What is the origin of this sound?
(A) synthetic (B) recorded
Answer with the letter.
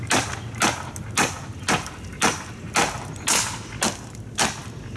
B